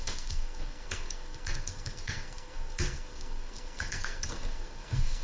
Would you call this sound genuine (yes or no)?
no